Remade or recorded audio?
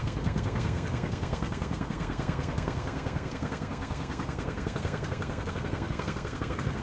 remade